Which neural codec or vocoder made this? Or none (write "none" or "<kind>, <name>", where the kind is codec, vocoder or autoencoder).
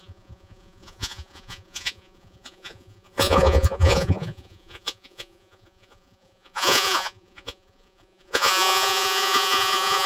vocoder, Vocos